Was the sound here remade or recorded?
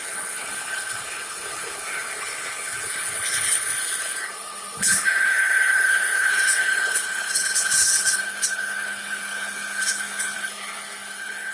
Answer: remade